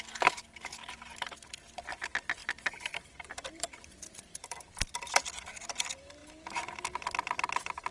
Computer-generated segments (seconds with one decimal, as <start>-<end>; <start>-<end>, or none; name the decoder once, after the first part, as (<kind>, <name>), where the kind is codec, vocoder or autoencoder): 0.0-6.2 (vocoder, BigVGAN v2)